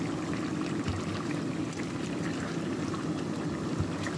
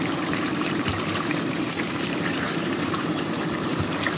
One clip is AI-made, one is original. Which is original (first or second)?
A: first